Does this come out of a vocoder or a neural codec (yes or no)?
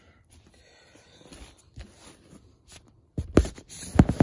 yes